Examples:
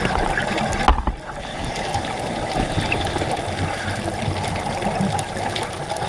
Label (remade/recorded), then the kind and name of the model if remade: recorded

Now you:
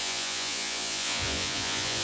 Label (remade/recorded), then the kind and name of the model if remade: remade, vocoder, Vocos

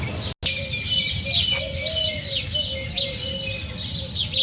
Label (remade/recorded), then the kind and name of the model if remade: recorded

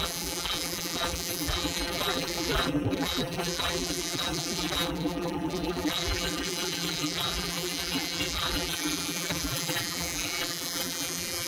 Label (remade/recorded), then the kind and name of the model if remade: remade, vocoder, BigVGAN v2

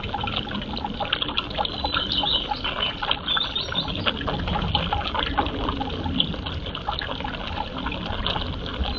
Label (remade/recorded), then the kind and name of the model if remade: recorded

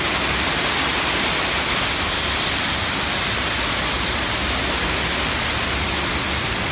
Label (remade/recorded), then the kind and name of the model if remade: recorded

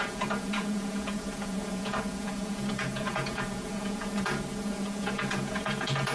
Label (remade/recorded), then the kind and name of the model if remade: remade, vocoder, Vocos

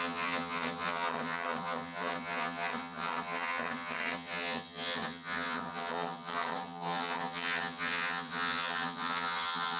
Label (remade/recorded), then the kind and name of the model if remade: remade, vocoder, HiFi-GAN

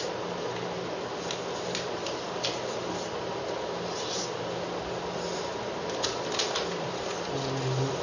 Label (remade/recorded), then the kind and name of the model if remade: recorded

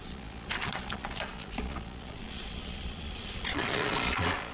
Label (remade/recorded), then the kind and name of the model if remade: remade, vocoder, Vocos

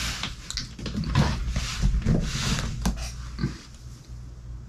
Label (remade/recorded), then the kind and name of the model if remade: recorded